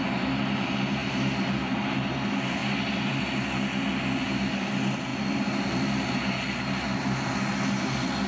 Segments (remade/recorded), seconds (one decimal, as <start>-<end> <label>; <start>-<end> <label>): 0.0-2.6 recorded; 2.6-3.2 remade; 3.2-8.3 recorded